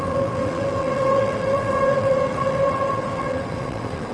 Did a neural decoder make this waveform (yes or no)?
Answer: yes